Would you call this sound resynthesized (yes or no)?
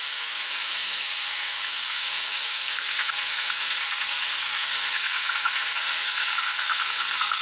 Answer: yes